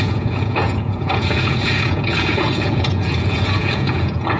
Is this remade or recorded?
remade